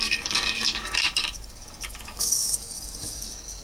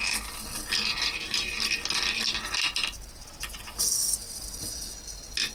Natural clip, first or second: second